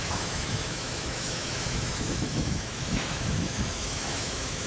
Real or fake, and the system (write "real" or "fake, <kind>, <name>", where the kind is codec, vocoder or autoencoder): fake, autoencoder, DAC-VAE